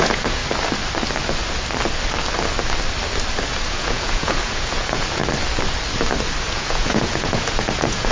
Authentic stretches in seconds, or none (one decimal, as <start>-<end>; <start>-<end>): 0.4-3.7; 5.2-6.5